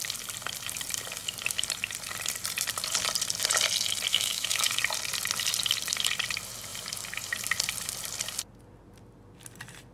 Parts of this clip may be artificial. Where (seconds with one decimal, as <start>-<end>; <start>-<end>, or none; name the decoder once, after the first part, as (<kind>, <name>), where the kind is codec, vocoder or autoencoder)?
4.1-4.8 (autoencoder, DAC-VAE)